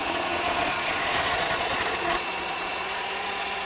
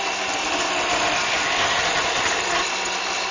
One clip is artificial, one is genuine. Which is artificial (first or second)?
first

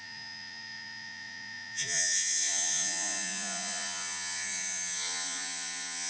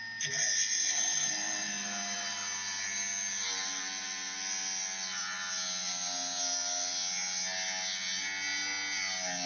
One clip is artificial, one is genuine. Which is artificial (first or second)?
first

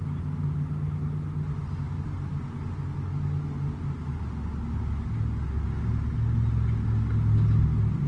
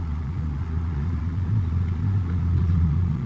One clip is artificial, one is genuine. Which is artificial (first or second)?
second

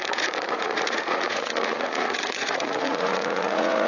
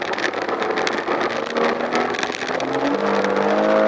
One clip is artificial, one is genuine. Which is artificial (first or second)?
first